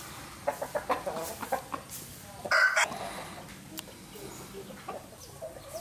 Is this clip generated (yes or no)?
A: no